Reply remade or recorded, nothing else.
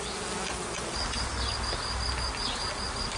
recorded